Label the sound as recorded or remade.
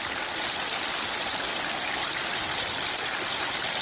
recorded